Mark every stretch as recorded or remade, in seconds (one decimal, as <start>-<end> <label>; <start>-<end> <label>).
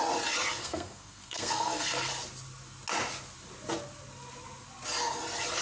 0.0-0.6 recorded; 0.6-2.1 remade; 2.1-5.6 recorded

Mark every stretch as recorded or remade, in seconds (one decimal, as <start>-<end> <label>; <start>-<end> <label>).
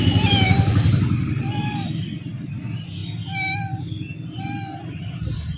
0.0-5.6 remade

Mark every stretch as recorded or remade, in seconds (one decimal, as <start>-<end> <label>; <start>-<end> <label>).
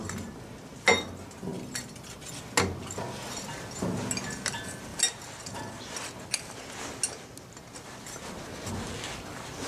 0.0-1.5 recorded; 1.5-2.4 remade; 2.4-9.7 recorded